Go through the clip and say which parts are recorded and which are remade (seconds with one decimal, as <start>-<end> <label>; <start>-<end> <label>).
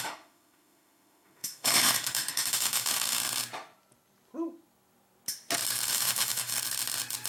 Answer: 0.0-3.2 remade; 3.2-5.9 recorded; 5.9-6.5 remade; 6.5-7.3 recorded